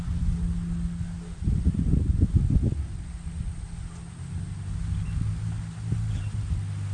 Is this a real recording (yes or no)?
yes